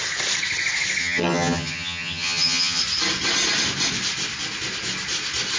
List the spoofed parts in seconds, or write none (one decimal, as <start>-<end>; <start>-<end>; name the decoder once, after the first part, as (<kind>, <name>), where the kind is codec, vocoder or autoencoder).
1.0-2.8 (vocoder, HiFi-GAN)